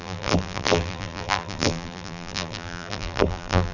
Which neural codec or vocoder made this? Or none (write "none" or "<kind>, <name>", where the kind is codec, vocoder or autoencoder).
vocoder, BigVGAN v2